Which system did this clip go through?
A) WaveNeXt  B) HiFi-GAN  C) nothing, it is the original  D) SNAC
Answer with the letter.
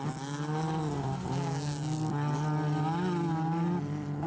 C